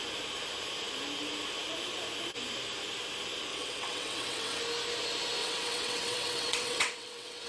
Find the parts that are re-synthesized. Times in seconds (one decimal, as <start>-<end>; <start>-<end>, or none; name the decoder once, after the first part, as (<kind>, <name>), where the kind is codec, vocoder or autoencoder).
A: 3.5-4.6 (vocoder, WaveNeXt); 5.4-7.5